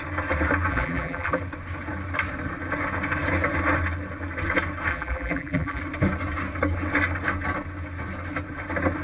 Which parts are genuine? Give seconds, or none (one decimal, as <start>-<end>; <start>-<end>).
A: 0.0-0.7; 1.4-4.9; 5.8-9.0